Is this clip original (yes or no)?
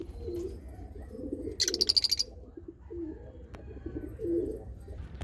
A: yes